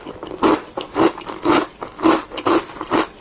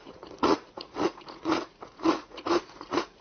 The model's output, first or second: second